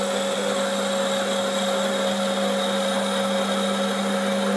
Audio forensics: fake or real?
real